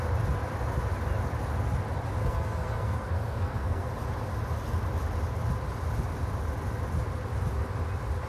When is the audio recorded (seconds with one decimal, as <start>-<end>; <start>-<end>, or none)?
0.0-2.2; 3.9-8.3